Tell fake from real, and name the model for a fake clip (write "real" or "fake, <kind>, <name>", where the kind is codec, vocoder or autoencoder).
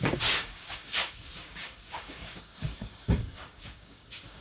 fake, codec, DAC